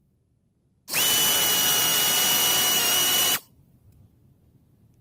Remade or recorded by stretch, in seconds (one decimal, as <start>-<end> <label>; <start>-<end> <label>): 0.0-3.0 recorded; 3.0-4.0 remade; 4.0-5.0 recorded